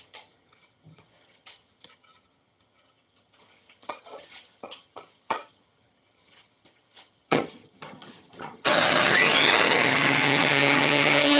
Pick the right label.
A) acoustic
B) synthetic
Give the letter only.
B